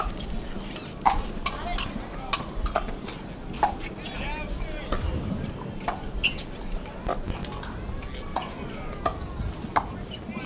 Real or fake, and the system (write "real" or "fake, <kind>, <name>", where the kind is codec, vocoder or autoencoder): real